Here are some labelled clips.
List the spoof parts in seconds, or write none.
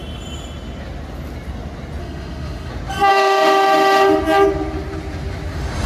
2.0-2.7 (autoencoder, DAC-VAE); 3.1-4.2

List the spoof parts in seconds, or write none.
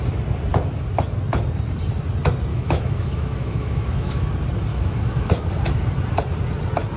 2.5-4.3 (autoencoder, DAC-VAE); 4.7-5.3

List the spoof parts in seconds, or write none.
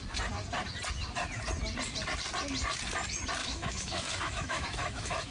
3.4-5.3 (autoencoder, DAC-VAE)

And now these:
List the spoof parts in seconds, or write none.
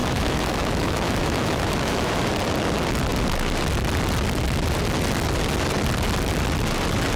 0.0-2.3 (autoencoder, DAC-VAE)